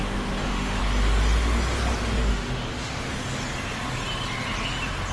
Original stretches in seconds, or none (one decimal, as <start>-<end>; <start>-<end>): 0.8-2.3; 3.1-5.1